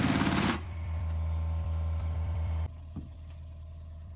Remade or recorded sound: remade